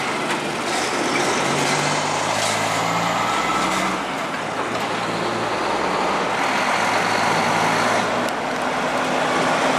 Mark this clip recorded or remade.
recorded